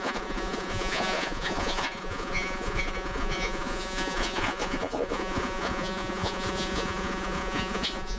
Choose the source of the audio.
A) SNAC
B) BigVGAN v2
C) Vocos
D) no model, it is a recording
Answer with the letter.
C